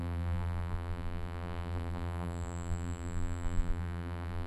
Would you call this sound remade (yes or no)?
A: yes